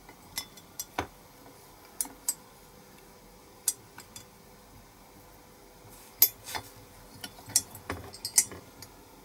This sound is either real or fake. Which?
real